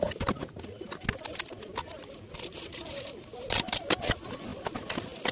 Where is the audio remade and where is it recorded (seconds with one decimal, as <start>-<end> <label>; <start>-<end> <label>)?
0.0-5.3 recorded